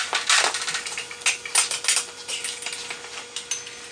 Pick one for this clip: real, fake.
real